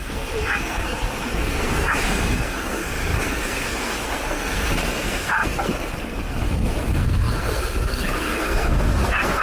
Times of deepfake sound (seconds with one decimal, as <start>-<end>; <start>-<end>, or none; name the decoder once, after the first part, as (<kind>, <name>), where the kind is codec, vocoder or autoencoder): 0.0-9.4 (codec, SNAC)